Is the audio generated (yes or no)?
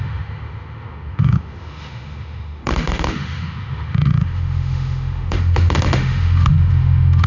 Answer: yes